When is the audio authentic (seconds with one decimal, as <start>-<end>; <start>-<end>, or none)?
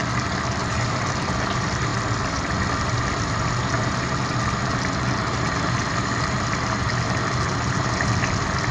0.0-8.7